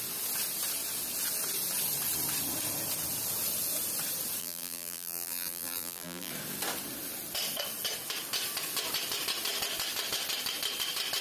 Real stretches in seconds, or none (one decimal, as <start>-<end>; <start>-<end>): 0.0-4.4; 6.3-11.2